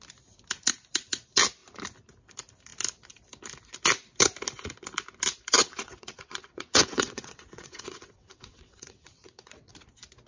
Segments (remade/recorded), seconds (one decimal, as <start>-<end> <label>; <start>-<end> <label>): 0.0-5.6 recorded; 5.6-9.7 remade; 9.7-10.3 recorded